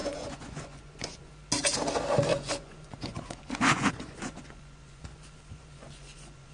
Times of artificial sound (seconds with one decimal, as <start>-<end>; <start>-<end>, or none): 0.0-1.3; 2.3-6.5